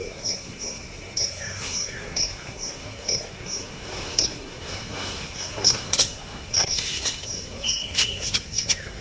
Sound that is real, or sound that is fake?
fake